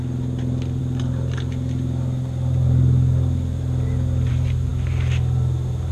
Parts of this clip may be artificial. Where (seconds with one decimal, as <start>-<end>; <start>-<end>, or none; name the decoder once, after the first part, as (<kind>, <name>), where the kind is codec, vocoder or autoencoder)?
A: none